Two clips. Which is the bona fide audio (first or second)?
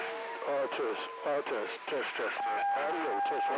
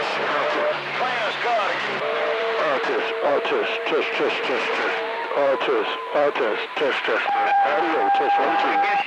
first